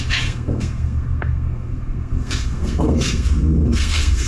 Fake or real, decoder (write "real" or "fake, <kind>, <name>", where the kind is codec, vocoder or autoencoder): fake, codec, SNAC